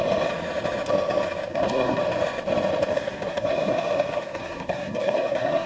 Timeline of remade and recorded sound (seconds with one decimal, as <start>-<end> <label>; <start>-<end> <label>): 0.0-1.5 recorded; 1.5-2.0 remade; 2.0-2.9 recorded; 2.9-5.7 remade